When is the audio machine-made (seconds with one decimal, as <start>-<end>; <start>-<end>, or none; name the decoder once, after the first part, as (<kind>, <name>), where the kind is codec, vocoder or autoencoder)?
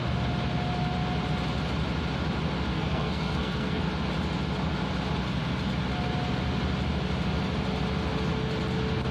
2.7-3.8 (codec, SNAC)